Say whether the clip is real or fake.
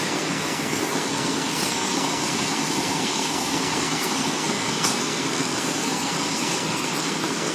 fake